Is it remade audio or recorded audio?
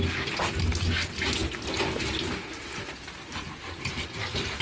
recorded